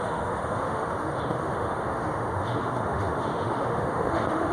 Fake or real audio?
fake